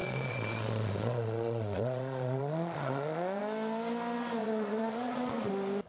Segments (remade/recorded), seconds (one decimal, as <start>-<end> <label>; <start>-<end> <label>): 0.0-3.4 remade; 3.4-4.4 recorded; 4.4-5.5 remade; 5.5-5.9 recorded